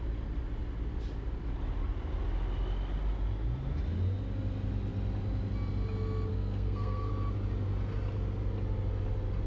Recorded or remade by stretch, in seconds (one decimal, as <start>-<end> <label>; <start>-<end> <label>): 0.0-6.3 recorded; 6.3-7.1 remade; 7.1-9.5 recorded